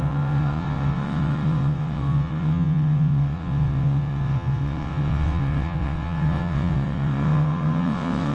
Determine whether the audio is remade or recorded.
remade